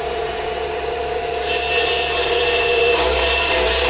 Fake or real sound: fake